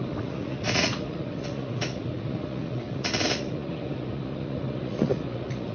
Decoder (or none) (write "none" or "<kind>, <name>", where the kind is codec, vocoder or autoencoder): vocoder, Vocos